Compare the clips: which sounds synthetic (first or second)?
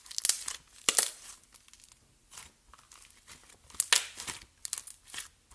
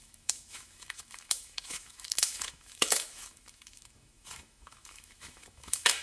second